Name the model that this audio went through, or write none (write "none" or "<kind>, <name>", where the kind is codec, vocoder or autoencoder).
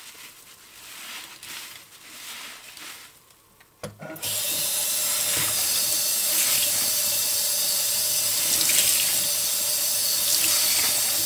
none